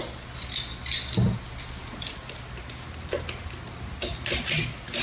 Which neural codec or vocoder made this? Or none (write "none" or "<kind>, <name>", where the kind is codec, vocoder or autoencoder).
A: none